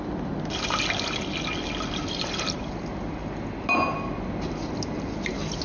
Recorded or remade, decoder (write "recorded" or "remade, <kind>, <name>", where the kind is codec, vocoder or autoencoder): recorded